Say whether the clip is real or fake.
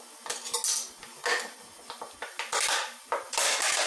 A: real